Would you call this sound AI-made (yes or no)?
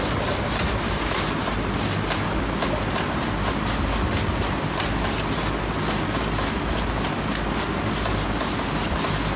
no